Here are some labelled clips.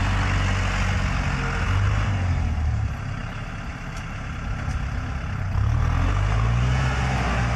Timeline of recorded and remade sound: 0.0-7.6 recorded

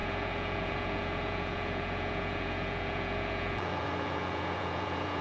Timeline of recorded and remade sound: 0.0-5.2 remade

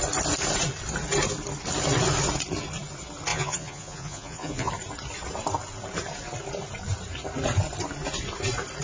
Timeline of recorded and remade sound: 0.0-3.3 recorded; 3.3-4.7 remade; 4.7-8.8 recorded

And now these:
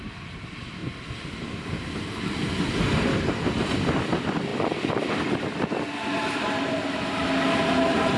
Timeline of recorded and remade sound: 0.0-8.2 recorded

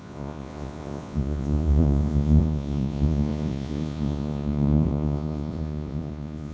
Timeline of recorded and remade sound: 0.0-6.5 remade

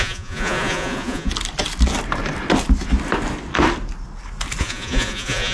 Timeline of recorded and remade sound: 0.0-1.3 remade; 1.3-4.6 recorded; 4.6-5.5 remade

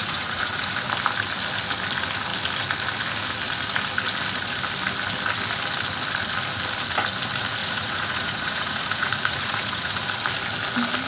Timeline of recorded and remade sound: 0.0-0.7 remade; 0.7-7.6 recorded; 7.6-10.0 remade; 10.0-11.1 recorded

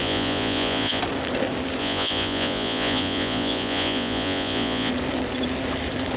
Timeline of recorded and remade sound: 0.0-1.0 remade; 1.0-1.8 recorded; 1.8-4.9 remade; 4.9-6.2 recorded